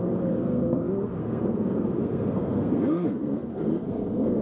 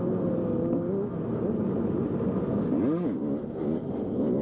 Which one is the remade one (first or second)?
first